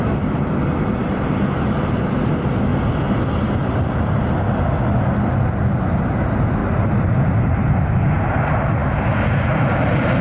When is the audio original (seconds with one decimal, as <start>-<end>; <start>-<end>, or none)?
0.0-0.9; 2.3-6.6; 7.7-10.2